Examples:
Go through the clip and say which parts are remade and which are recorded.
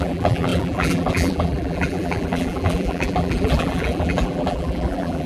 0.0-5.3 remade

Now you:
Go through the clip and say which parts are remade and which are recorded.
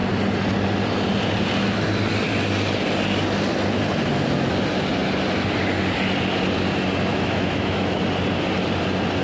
0.0-7.1 recorded; 7.1-8.0 remade; 8.0-9.2 recorded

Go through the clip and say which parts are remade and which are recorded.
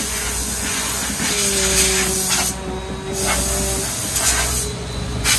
0.0-1.0 remade; 1.0-4.2 recorded; 4.2-5.4 remade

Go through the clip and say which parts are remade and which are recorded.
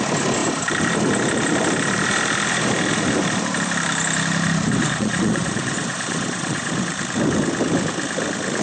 0.0-4.8 recorded; 4.8-6.7 remade; 6.7-8.6 recorded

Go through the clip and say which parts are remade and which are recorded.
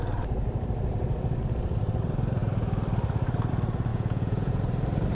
0.0-3.9 recorded; 3.9-4.5 remade; 4.5-5.1 recorded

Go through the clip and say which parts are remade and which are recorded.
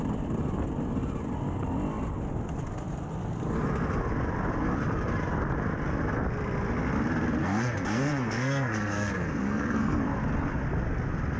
0.0-7.4 recorded; 7.4-10.0 remade; 10.0-11.4 recorded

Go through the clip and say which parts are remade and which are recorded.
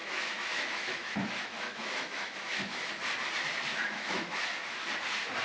0.0-2.9 remade; 2.9-3.7 recorded; 3.7-4.4 remade; 4.4-5.4 recorded